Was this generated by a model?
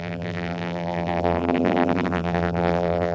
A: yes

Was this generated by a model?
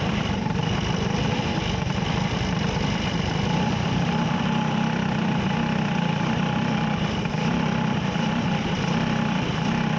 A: yes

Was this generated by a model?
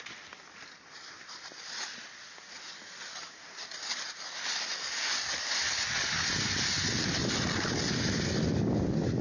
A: no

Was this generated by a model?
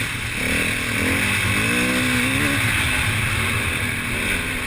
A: no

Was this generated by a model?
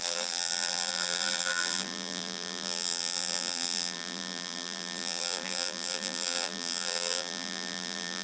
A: yes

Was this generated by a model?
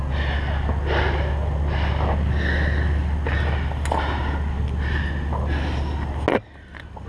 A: no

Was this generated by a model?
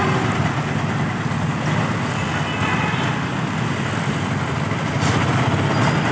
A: no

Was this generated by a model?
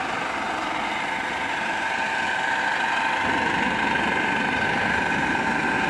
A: no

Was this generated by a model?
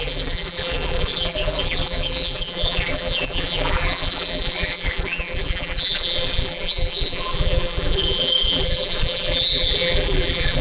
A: yes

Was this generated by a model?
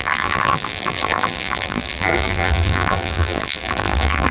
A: yes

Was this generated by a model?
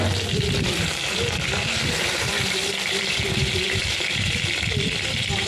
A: yes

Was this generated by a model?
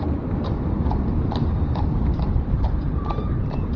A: yes